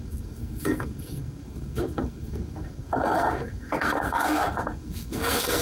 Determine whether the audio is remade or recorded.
remade